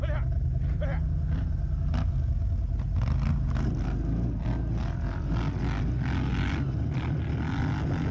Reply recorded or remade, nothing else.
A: recorded